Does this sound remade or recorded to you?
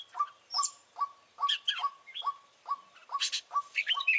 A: remade